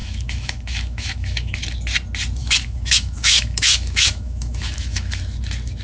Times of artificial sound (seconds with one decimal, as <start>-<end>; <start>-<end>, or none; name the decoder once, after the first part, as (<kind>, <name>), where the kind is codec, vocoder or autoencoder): 0.0-1.6 (autoencoder, DAC-VAE); 2.4-5.2